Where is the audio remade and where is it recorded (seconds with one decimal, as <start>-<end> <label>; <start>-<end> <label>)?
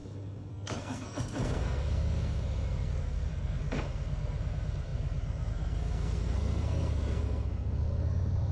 0.0-8.5 remade